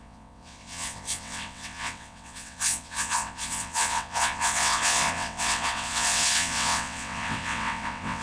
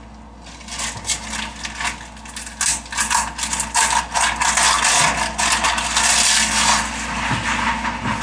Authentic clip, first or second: second